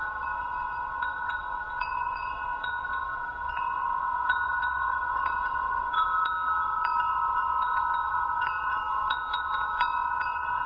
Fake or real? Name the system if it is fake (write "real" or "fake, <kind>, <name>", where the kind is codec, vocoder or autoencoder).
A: fake, vocoder, WaveNeXt